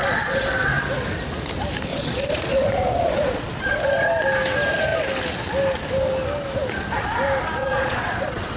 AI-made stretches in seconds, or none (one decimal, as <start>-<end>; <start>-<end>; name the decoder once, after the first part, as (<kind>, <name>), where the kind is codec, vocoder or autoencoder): 0.0-0.5 (vocoder, Vocos); 1.9-3.8; 7.6-8.6